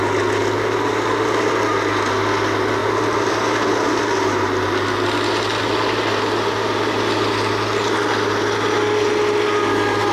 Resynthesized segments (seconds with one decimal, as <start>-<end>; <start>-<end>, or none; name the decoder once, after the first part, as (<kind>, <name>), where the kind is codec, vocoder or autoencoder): none